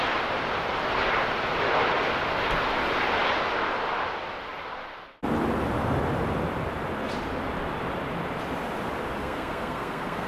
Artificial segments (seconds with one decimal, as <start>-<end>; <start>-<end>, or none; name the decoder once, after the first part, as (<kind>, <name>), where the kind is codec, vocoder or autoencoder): 9.2-10.3 (codec, SNAC)